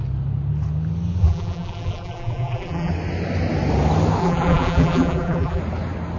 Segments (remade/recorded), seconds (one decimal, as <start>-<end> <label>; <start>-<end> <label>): 0.0-1.2 recorded; 1.2-2.9 remade; 2.9-4.2 recorded; 4.2-5.6 remade; 5.6-6.2 recorded